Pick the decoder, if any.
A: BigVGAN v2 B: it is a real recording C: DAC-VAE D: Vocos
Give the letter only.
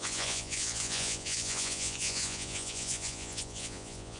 D